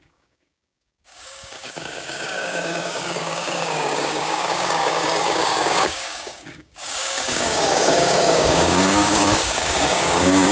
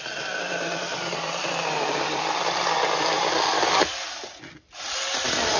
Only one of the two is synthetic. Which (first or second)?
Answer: first